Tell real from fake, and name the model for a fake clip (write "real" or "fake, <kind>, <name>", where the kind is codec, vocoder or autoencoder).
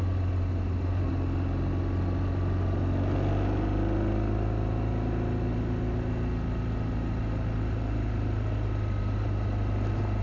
real